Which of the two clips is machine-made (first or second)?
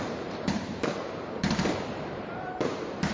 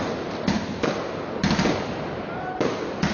first